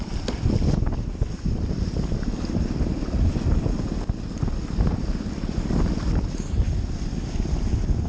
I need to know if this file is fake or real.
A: real